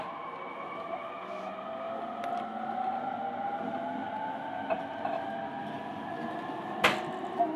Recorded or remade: recorded